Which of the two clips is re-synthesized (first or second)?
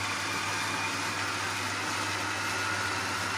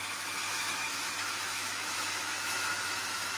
second